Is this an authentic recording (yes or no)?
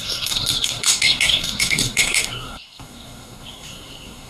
no